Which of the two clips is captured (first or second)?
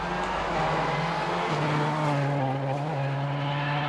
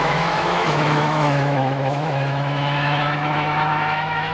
first